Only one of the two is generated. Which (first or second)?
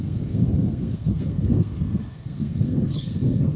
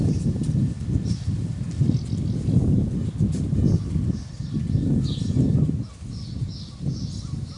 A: first